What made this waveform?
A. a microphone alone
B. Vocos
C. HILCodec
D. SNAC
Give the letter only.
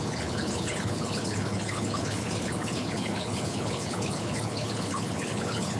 C